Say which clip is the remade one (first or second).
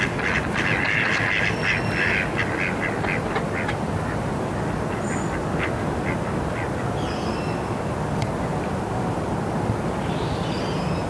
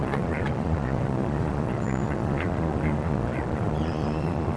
second